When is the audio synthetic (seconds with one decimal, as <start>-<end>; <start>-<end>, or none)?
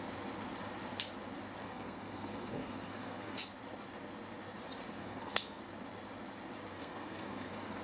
1.6-3.4; 5.0-5.6; 6.7-7.8